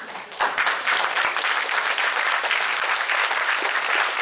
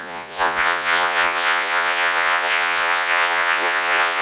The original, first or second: first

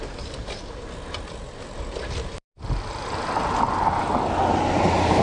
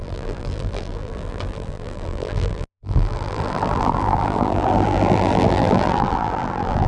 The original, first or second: first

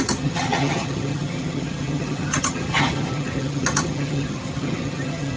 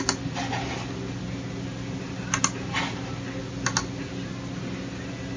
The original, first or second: second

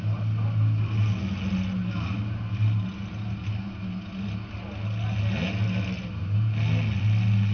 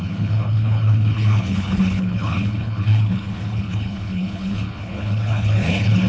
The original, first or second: first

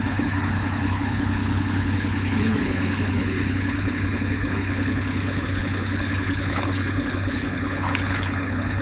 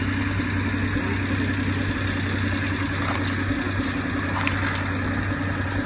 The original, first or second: second